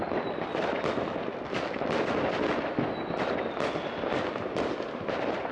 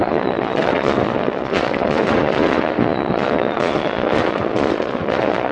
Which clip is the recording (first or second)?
first